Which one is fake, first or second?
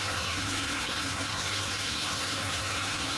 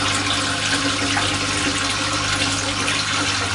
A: first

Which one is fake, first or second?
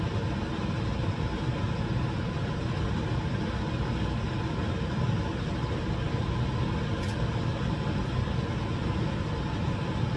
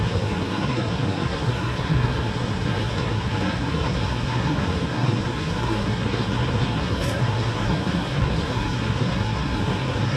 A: second